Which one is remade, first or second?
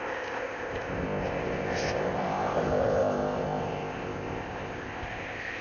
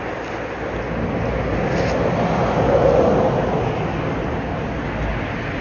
first